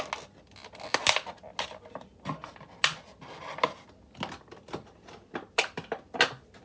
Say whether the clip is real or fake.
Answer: real